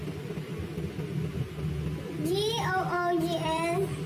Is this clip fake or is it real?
real